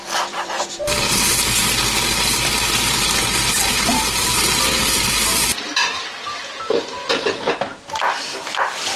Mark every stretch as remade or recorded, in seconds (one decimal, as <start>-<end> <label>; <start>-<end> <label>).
0.0-1.1 remade; 1.1-3.7 recorded; 3.7-7.6 remade; 7.6-9.0 recorded